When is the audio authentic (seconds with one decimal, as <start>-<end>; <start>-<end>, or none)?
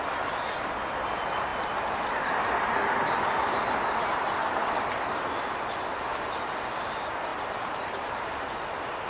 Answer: 0.0-7.3; 8.5-9.1